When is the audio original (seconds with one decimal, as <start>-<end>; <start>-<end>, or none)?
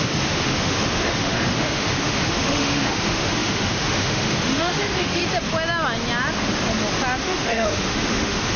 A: 5.2-7.2